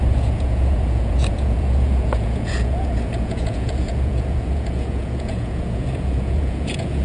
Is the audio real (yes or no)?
no